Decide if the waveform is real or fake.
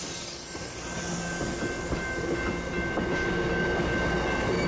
real